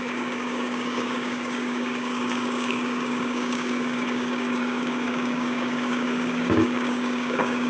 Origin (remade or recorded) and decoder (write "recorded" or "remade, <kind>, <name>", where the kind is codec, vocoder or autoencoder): remade, codec, DAC